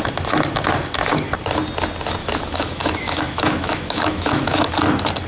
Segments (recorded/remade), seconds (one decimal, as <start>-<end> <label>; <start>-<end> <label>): 0.0-2.2 recorded; 2.2-4.7 remade; 4.7-5.3 recorded